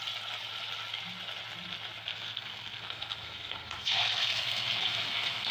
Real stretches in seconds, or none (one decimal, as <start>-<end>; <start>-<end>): 0.0-2.1